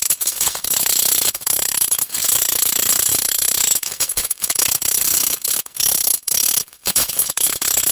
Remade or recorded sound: remade